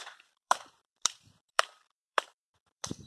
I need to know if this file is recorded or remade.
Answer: remade